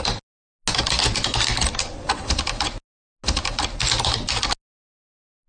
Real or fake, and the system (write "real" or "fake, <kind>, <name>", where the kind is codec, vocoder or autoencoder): real